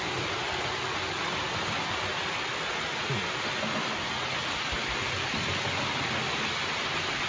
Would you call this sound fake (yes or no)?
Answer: no